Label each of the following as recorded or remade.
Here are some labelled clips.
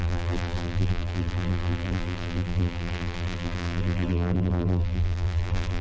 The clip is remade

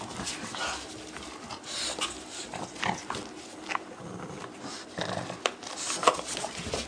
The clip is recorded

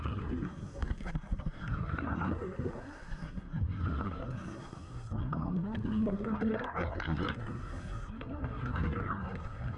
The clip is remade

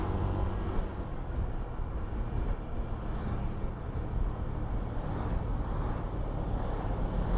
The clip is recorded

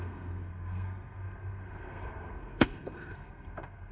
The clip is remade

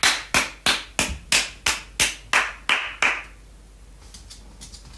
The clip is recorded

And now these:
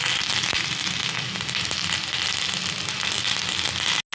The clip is recorded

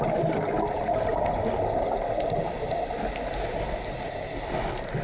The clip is recorded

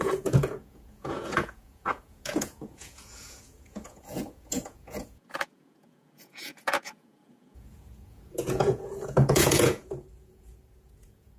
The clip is remade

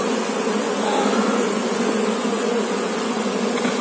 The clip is remade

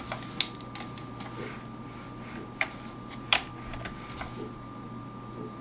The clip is recorded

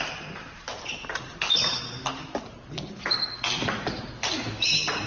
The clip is recorded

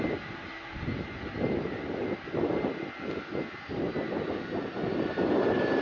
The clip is remade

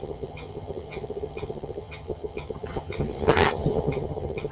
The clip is remade